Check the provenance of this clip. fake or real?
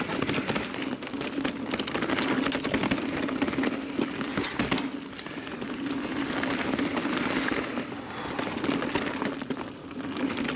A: real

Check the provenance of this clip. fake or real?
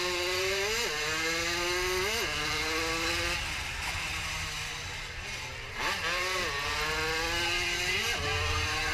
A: real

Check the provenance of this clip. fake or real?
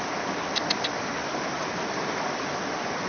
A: real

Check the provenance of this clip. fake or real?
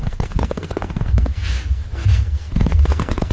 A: fake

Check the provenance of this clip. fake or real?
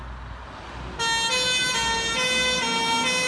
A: real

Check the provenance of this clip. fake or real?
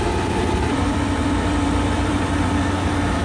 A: fake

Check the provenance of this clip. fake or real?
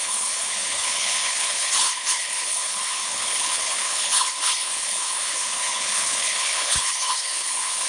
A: fake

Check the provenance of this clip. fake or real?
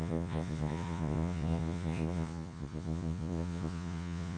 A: fake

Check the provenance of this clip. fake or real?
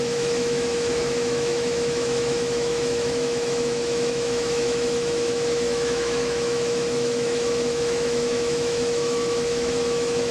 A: fake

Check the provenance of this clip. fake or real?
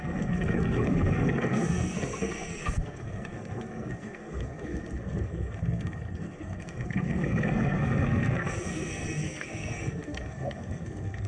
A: fake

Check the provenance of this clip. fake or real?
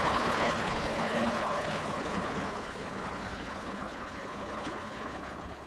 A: fake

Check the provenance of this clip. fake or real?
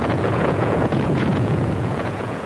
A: fake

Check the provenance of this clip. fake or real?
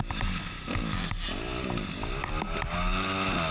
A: real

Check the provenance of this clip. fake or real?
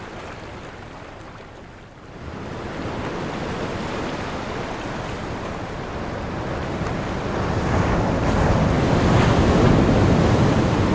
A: real